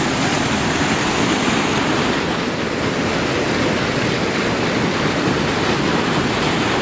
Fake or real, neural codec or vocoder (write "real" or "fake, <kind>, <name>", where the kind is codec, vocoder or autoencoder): real